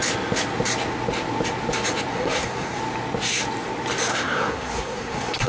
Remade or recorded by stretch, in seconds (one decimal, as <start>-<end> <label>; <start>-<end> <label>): 0.0-2.1 recorded; 2.1-2.8 remade; 2.8-4.1 recorded; 4.1-5.5 remade

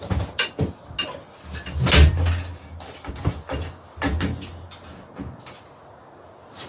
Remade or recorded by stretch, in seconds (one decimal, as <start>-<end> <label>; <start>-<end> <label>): 0.0-6.7 recorded

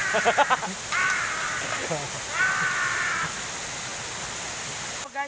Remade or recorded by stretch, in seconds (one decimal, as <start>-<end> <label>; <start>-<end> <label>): 0.0-5.3 recorded

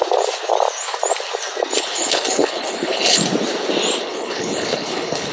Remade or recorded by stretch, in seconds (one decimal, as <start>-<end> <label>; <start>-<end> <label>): 0.0-1.8 recorded; 1.8-3.2 remade; 3.2-4.0 recorded; 4.0-5.3 remade

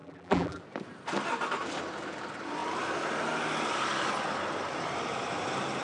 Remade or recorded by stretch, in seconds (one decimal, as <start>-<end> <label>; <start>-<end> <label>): 0.0-0.6 remade; 0.6-5.8 recorded

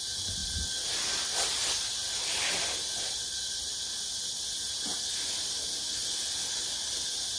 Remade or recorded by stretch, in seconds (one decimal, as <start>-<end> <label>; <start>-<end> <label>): 0.0-7.4 recorded

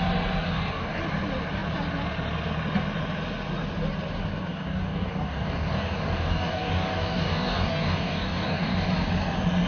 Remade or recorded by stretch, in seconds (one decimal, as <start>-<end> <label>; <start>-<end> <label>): 0.0-0.4 recorded; 0.4-1.0 remade; 1.0-4.5 recorded; 4.5-8.9 remade; 8.9-9.7 recorded

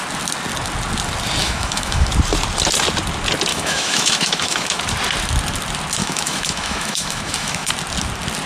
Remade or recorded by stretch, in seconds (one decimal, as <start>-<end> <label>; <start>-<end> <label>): 0.0-1.4 recorded; 1.4-2.1 remade; 2.1-3.5 recorded; 3.5-4.8 remade; 4.8-6.0 recorded; 6.0-7.7 remade; 7.7-8.5 recorded